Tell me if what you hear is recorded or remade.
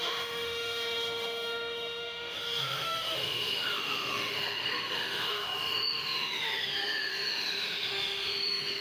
remade